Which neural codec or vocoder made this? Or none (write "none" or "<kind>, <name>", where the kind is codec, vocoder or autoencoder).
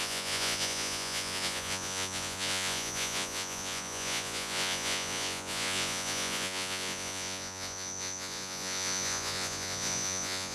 vocoder, Vocos